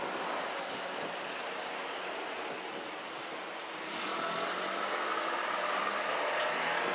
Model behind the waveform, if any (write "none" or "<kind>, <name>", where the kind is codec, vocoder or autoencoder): none